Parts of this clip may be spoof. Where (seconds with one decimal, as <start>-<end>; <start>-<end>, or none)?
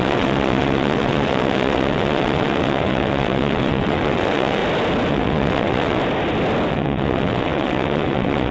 0.0-4.6; 5.1-6.0; 6.7-8.5